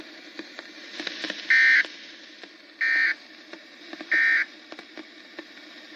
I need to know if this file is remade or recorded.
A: recorded